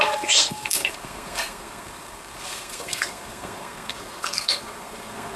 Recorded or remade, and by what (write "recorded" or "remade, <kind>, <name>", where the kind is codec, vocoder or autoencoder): remade, codec, SNAC